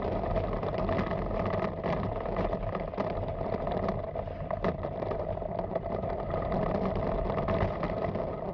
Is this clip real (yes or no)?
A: no